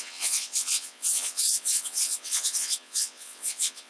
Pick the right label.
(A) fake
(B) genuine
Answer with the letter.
A